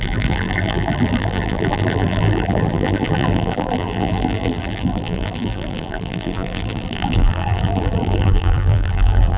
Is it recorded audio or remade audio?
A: remade